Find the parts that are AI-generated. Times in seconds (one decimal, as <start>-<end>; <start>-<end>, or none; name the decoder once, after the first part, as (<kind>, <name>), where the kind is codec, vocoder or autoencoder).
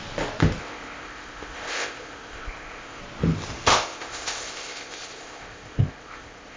0.6-3.0 (codec, ZipCodec); 3.7-6.6